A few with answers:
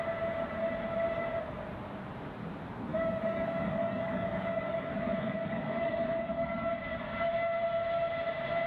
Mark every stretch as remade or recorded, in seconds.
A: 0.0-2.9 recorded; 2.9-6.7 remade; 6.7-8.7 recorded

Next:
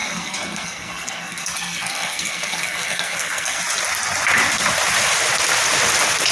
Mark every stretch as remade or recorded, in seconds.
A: 0.0-3.6 remade; 3.6-6.3 recorded